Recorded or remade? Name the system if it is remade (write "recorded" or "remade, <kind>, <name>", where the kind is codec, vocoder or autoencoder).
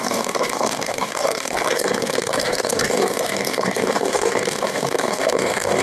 remade, codec, DAC